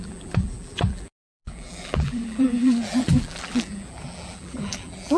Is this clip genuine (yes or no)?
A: no